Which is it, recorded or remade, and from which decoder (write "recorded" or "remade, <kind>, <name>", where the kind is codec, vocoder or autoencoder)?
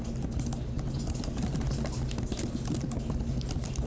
recorded